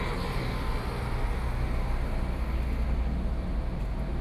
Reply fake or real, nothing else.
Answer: real